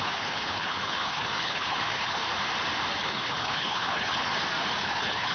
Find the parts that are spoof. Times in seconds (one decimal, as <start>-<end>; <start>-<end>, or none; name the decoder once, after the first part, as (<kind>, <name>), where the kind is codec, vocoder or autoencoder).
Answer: 0.0-2.2 (codec, HILCodec); 3.0-4.3; 4.8-5.3